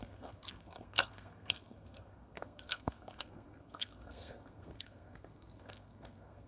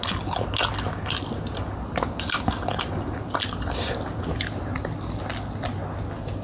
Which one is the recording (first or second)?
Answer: second